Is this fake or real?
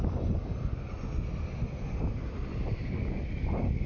real